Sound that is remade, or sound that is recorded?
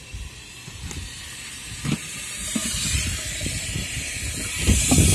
recorded